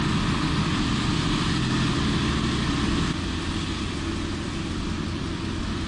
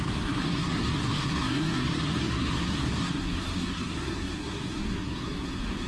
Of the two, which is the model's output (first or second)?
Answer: second